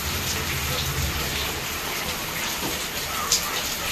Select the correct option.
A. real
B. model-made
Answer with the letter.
A